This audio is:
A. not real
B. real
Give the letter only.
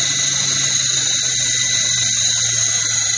B